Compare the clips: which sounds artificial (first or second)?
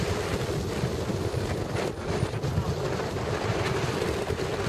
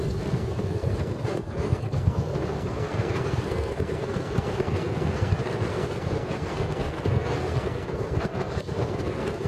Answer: second